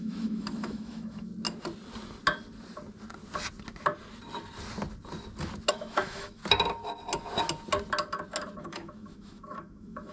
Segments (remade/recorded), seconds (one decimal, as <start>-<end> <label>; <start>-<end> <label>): 0.0-1.3 remade; 1.3-5.7 recorded; 5.7-6.4 remade; 6.4-8.6 recorded; 8.6-10.1 remade